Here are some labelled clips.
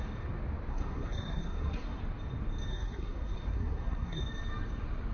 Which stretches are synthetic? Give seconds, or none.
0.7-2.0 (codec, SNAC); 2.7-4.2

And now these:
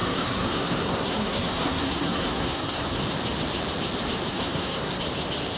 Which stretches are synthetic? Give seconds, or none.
0.0-3.0 (codec, SNAC); 4.3-5.0

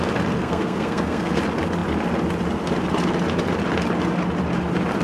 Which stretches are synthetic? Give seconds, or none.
0.4-1.4 (codec, SNAC)

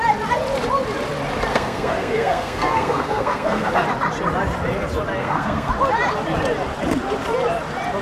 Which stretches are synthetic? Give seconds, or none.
1.5-3.7 (codec, SNAC); 5.2-5.7